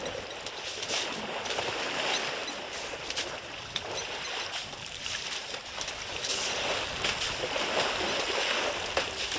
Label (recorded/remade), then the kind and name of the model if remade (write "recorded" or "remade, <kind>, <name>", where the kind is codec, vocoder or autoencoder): recorded